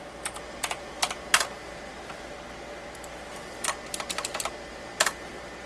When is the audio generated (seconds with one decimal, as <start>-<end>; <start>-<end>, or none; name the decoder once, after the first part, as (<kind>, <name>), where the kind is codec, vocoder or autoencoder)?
none